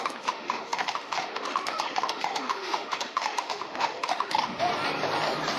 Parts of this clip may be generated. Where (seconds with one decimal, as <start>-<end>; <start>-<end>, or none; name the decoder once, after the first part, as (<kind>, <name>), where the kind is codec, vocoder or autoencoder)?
0.0-4.7 (autoencoder, DAC-VAE)